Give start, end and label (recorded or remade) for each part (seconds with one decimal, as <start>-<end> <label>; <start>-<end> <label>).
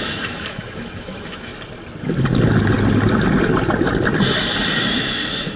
0.0-1.5 remade; 1.5-4.9 recorded; 4.9-5.6 remade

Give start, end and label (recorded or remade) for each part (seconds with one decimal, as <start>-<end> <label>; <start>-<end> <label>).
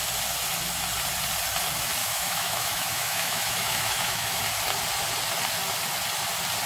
0.0-2.0 recorded; 2.0-4.4 remade; 4.4-6.7 recorded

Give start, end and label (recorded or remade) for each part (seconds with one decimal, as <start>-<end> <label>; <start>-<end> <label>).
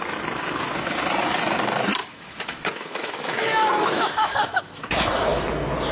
0.0-2.0 recorded; 2.0-5.5 remade; 5.5-5.9 recorded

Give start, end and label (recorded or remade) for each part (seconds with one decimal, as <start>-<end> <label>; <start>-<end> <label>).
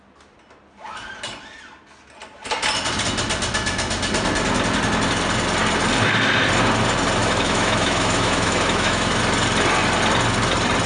0.0-7.2 recorded; 7.2-9.2 remade; 9.2-10.9 recorded